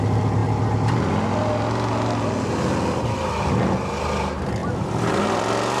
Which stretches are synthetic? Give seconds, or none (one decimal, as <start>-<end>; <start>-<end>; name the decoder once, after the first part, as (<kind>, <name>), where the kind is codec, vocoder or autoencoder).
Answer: 4.6-5.1 (vocoder, BigVGAN v2)